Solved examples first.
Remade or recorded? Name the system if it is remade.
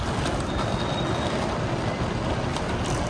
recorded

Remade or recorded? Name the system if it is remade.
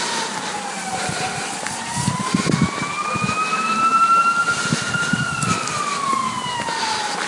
recorded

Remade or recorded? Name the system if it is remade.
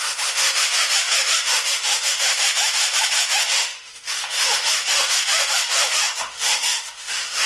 remade, autoencoder, DAC-VAE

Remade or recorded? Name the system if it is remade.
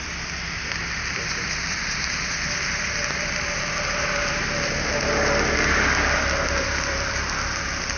recorded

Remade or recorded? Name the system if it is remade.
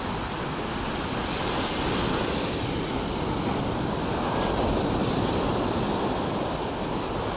recorded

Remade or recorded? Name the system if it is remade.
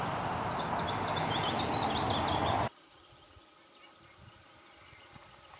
recorded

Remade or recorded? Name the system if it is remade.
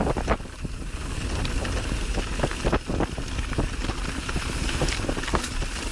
recorded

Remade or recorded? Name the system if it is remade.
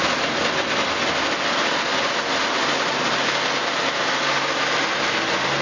recorded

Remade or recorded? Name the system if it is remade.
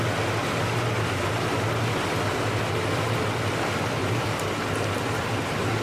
recorded